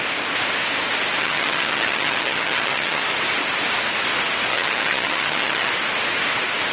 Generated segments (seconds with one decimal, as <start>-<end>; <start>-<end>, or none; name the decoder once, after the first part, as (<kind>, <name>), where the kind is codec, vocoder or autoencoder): 1.2-3.0 (vocoder, HiFi-GAN); 4.5-5.7